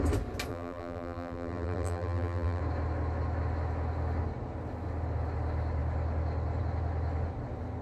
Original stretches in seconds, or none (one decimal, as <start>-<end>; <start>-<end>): 0.0-0.5; 2.6-7.8